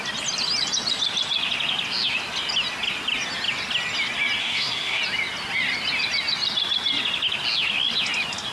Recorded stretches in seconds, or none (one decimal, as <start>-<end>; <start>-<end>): 0.0-4.4; 5.0-8.5